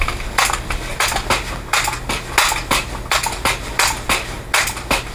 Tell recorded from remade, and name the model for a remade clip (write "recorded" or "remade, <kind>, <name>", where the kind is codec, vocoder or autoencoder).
recorded